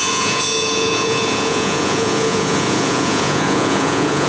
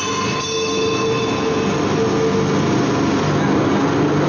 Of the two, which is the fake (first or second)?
first